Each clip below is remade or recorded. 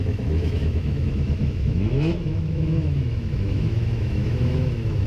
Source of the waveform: remade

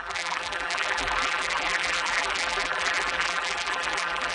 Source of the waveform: remade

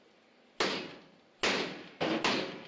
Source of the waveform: recorded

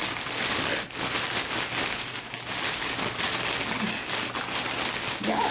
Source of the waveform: recorded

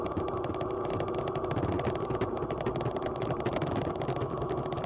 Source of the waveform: recorded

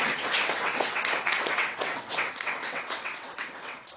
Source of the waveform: remade